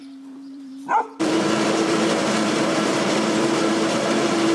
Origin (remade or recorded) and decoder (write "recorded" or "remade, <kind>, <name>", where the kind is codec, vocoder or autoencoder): remade, vocoder, BigVGAN v2